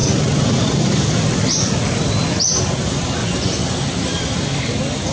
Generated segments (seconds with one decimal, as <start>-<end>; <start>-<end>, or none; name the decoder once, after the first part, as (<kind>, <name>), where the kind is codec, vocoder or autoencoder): 3.2-3.8 (vocoder, Vocos)